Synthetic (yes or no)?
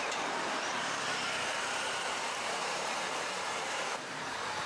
yes